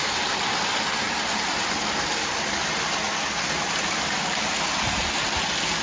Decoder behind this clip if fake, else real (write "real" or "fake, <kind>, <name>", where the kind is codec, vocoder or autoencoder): real